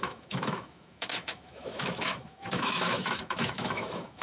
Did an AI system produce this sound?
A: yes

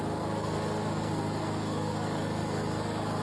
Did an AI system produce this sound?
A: yes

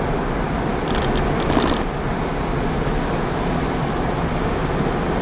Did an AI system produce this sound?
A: no